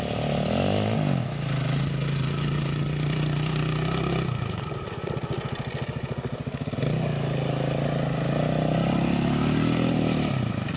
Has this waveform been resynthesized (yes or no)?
no